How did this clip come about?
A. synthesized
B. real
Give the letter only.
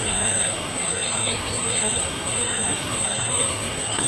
A